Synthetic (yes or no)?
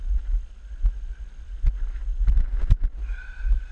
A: no